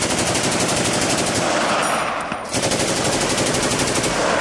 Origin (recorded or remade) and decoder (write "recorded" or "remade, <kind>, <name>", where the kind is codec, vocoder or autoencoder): recorded